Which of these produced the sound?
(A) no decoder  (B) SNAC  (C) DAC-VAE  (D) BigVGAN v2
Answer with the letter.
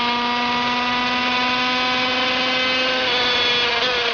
A